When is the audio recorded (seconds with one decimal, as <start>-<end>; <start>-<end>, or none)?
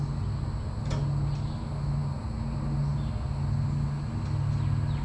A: 0.0-5.0